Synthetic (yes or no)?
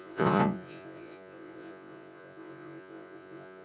yes